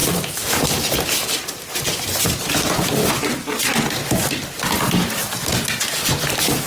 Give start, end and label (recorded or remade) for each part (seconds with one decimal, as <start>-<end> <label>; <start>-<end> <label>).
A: 0.0-6.7 recorded